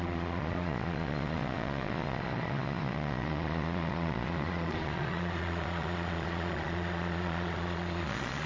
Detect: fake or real fake